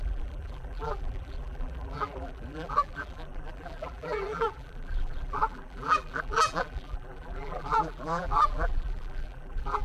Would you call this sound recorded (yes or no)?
no